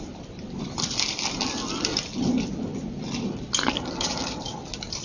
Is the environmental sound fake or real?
real